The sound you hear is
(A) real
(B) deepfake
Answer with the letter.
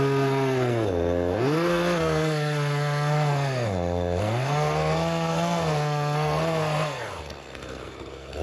B